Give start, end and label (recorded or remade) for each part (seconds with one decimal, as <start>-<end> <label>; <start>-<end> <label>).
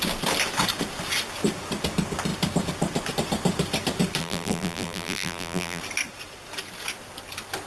0.0-4.2 recorded; 4.2-5.8 remade; 5.8-7.7 recorded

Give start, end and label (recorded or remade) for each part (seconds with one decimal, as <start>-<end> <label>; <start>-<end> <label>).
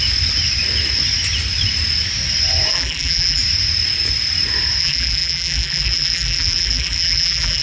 0.0-2.7 recorded; 2.7-3.4 remade; 3.4-4.8 recorded; 4.8-7.6 remade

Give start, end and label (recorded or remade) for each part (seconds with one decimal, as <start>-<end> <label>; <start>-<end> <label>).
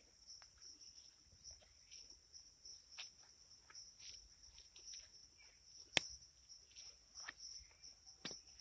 0.0-2.7 remade; 2.7-4.1 recorded; 4.1-5.2 remade; 5.2-7.3 recorded; 7.3-7.9 remade; 7.9-8.6 recorded